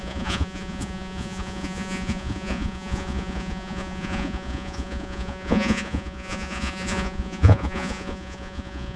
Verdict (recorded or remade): remade